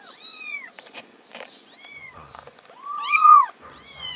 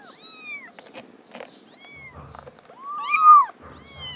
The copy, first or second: first